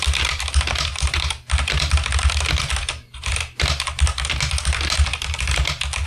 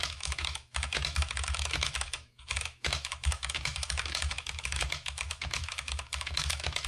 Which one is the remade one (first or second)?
second